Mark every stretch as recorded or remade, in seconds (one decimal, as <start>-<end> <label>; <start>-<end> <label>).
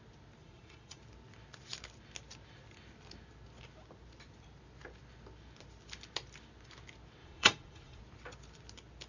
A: 0.0-0.4 recorded; 0.4-1.0 remade; 1.0-7.2 recorded; 7.2-8.0 remade; 8.0-9.1 recorded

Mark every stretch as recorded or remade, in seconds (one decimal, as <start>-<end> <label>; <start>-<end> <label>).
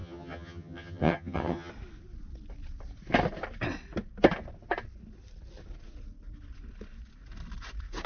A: 0.0-1.7 remade; 1.7-8.1 recorded